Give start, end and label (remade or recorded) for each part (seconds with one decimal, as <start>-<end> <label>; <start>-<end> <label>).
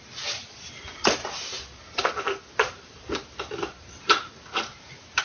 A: 0.0-5.2 recorded